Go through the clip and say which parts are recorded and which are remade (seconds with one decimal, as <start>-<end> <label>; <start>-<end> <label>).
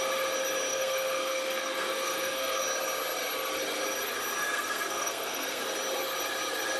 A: 0.0-0.7 recorded; 0.7-2.6 remade; 2.6-4.4 recorded; 4.4-5.6 remade; 5.6-6.8 recorded